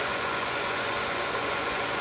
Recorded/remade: remade